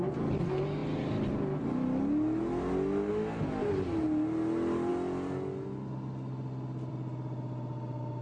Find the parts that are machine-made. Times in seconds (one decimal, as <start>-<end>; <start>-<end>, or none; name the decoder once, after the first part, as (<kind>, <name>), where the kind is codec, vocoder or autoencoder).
none